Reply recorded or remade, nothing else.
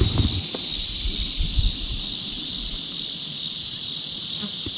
recorded